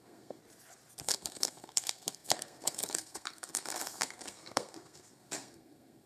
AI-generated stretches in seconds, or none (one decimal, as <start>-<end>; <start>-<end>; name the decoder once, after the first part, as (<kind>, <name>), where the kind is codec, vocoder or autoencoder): 0.0-0.4 (codec, SNAC); 1.0-6.1